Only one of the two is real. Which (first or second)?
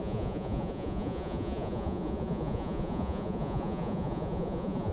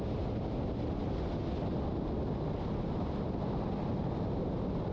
second